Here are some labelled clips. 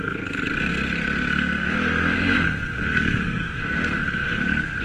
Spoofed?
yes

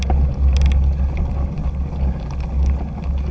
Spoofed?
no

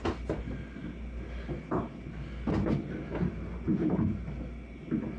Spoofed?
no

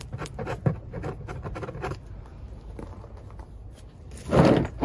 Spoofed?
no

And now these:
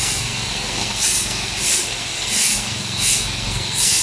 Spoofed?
yes